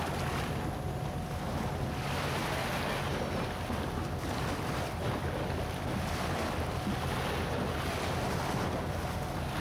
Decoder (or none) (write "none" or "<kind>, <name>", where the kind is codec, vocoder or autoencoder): none